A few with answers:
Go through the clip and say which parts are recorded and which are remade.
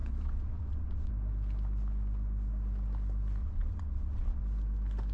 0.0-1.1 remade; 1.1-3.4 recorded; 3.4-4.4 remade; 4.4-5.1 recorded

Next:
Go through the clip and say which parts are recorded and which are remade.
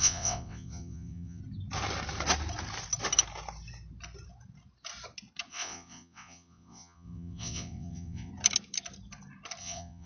0.0-1.4 remade; 1.4-5.5 recorded; 5.5-8.3 remade; 8.3-9.6 recorded; 9.6-10.1 remade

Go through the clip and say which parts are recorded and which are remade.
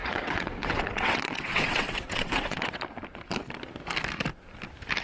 0.0-2.8 remade; 2.8-5.0 recorded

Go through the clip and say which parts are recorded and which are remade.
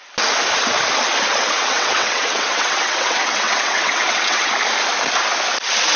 0.0-1.3 recorded; 1.3-4.5 remade; 4.5-6.0 recorded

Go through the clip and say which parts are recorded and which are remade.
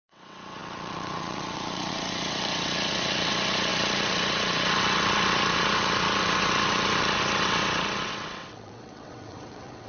0.0-9.9 remade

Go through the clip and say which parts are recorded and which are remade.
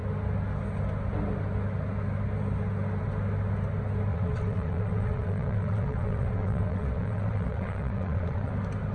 0.0-4.1 recorded; 4.1-8.5 remade; 8.5-8.9 recorded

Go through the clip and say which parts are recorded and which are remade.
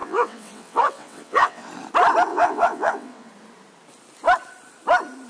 0.0-1.7 remade; 1.7-2.3 recorded; 2.3-3.3 remade; 3.3-5.3 recorded